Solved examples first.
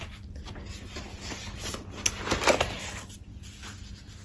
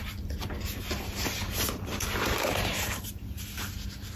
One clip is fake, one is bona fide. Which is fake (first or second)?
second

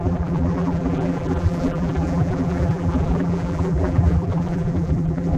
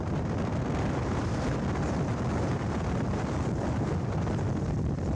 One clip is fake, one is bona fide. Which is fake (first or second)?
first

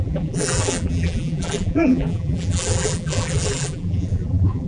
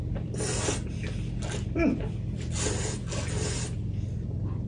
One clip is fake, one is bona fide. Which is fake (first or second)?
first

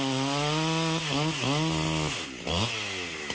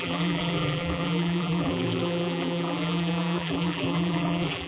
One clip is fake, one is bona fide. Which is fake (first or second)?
second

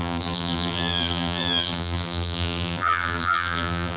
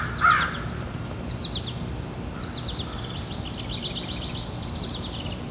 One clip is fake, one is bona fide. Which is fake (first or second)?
first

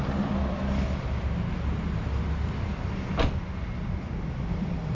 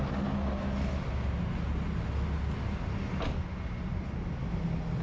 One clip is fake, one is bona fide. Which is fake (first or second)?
first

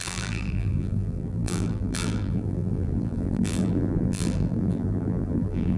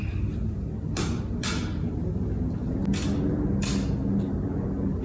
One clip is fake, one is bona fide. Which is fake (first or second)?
first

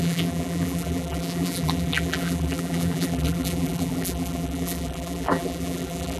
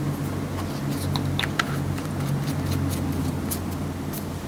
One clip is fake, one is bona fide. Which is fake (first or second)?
first